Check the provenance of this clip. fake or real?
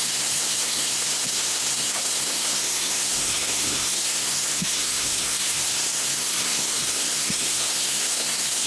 fake